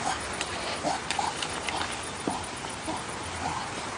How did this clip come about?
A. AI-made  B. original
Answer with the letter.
A